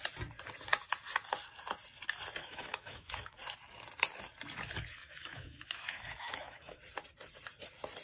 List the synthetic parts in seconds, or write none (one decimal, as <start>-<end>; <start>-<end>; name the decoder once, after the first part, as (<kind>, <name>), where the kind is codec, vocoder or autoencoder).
2.4-3.4 (autoencoder, DAC-VAE); 5.0-6.8